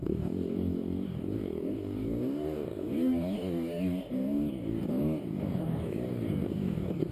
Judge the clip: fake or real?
fake